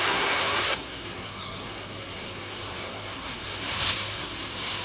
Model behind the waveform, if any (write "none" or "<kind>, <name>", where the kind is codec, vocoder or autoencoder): codec, SNAC